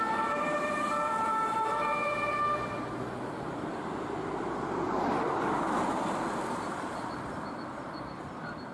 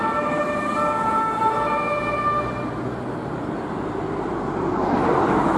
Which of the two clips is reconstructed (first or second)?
first